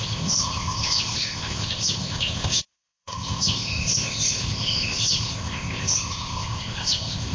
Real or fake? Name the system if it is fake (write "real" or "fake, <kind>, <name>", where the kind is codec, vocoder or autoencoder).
fake, codec, ZipCodec